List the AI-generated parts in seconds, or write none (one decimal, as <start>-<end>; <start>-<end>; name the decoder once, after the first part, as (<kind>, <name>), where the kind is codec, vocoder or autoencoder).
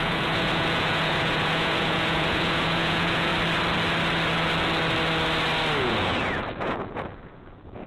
0.0-3.3 (vocoder, Vocos); 5.8-7.9